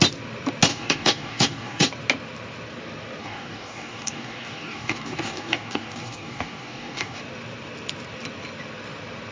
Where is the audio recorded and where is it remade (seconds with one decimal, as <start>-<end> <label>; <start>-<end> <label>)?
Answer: 0.0-0.7 recorded; 0.7-1.9 remade; 1.9-3.2 recorded; 3.2-7.2 remade; 7.2-9.3 recorded